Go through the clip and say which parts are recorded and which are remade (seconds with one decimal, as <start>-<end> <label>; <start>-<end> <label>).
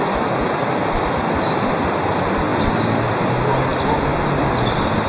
0.0-2.5 recorded; 2.5-3.3 remade; 3.3-5.1 recorded